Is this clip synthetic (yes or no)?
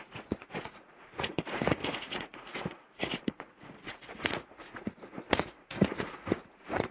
yes